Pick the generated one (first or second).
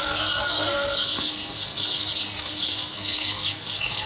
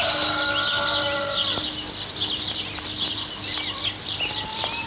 first